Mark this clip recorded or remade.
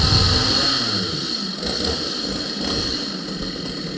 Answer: recorded